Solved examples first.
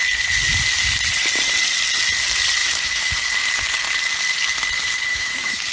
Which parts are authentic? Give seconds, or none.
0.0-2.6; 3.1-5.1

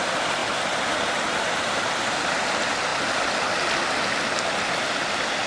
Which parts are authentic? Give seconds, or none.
0.0-5.5

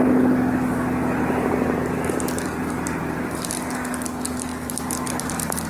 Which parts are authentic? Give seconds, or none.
0.0-5.7

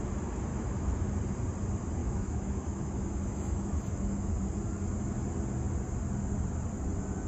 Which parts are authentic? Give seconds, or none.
0.0-0.5; 1.2-2.0; 4.4-7.3

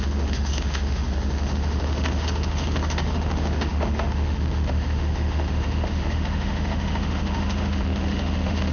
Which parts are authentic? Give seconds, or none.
none